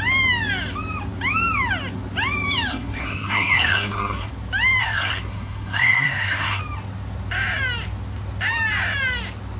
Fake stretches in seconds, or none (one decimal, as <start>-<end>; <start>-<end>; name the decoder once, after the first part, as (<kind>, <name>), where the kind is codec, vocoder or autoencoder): 2.7-4.3 (codec, SNAC); 4.8-6.6